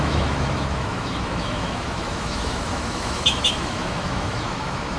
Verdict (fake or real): fake